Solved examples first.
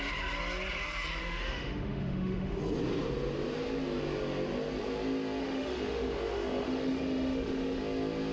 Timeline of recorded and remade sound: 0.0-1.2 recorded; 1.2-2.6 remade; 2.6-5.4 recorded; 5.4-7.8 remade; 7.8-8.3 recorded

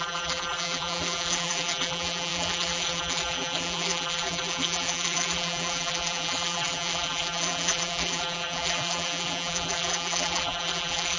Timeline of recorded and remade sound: 0.0-11.2 remade

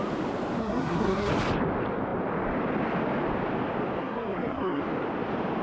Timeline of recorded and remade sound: 0.0-0.6 recorded; 0.6-1.3 remade; 1.3-4.0 recorded; 4.0-4.8 remade; 4.8-5.6 recorded